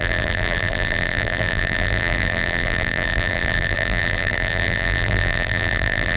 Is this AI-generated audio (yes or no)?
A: yes